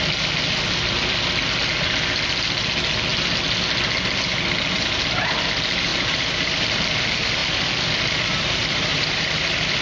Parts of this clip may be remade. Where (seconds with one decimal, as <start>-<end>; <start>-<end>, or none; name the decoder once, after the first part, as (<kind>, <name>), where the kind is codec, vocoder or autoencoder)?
5.9-6.7 (vocoder, BigVGAN v2); 8.9-9.8